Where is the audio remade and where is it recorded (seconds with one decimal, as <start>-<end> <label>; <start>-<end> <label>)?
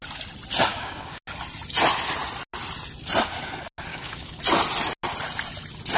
0.0-0.7 recorded; 0.7-1.2 remade; 1.2-3.9 recorded; 3.9-4.4 remade; 4.4-6.0 recorded